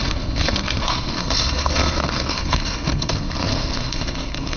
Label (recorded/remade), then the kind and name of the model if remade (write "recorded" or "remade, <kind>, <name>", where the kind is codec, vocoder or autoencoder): remade, codec, SNAC